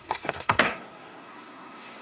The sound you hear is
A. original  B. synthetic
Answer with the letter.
B